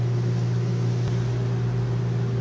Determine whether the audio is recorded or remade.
recorded